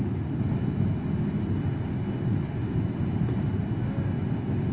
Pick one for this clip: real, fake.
real